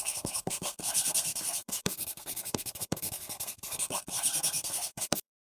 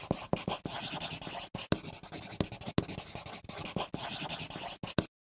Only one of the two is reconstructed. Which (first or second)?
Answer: first